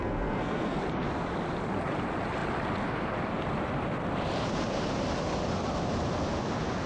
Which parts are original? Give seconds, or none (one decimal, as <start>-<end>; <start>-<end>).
0.8-6.9